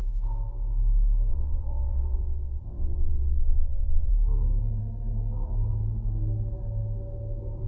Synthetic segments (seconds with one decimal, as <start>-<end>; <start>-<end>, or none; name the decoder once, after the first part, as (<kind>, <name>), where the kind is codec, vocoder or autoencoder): 1.3-4.1 (vocoder, WaveNeXt)